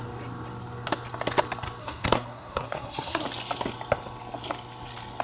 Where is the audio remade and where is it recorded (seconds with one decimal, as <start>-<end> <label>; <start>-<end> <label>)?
0.0-1.8 recorded; 1.8-3.2 remade; 3.2-5.2 recorded